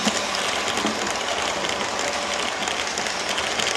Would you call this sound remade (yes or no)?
no